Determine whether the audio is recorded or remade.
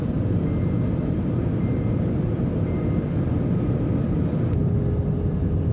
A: recorded